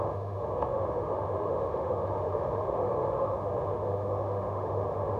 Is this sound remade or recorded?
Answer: remade